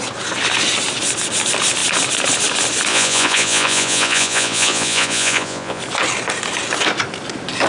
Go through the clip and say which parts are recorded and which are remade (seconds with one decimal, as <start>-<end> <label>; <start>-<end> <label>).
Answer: 0.0-2.9 recorded; 2.9-5.8 remade; 5.8-7.7 recorded